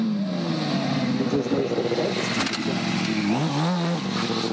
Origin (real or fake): real